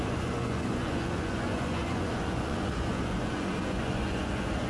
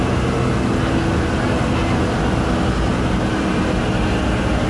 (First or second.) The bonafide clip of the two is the second